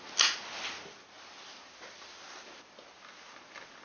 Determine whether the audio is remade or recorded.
recorded